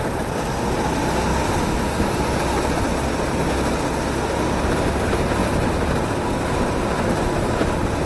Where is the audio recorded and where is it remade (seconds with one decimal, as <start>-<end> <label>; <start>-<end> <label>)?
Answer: 0.0-5.4 recorded; 5.4-5.9 remade; 5.9-8.1 recorded